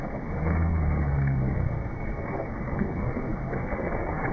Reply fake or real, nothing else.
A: fake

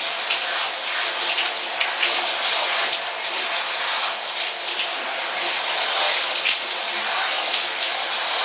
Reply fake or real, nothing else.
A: real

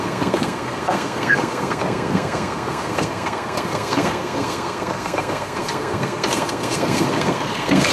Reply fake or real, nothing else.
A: fake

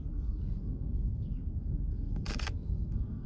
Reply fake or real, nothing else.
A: fake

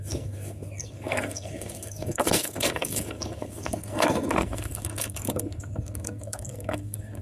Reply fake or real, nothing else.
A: fake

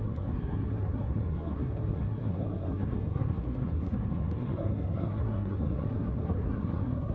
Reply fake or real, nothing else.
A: fake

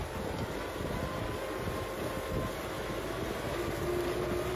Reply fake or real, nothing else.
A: real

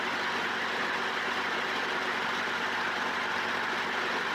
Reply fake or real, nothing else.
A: real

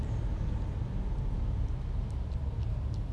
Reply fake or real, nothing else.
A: real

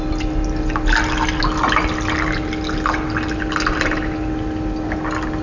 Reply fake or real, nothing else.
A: real